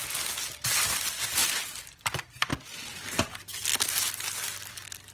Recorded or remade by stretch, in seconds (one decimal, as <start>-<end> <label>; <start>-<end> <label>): 0.0-5.1 recorded